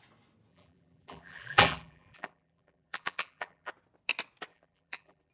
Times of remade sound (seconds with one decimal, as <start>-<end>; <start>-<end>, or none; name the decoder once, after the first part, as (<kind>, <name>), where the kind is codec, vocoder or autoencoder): 0.5-3.7 (vocoder, BigVGAN v2); 4.5-5.3

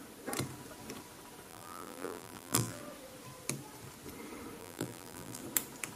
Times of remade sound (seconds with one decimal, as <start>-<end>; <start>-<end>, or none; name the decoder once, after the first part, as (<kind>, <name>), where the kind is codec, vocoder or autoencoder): 1.5-2.8 (vocoder, BigVGAN v2); 4.6-5.4

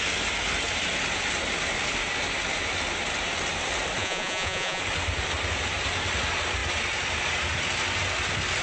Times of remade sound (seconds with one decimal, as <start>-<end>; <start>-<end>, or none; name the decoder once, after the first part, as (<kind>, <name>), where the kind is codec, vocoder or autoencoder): 4.0-4.8 (vocoder, Vocos)

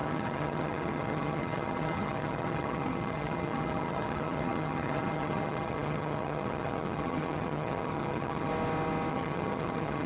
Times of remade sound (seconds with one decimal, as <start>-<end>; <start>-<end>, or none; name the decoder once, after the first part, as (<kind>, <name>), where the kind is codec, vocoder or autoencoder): 0.0-8.5 (vocoder, HiFi-GAN); 9.1-10.1

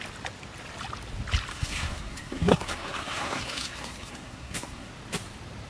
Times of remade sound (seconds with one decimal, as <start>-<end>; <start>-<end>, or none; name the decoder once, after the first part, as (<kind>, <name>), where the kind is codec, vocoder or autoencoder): 1.5-4.9 (codec, SNAC)

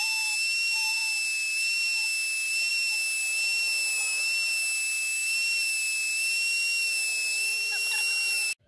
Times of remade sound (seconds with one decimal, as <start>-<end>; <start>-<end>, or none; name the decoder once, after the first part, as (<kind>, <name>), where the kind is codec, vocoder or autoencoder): none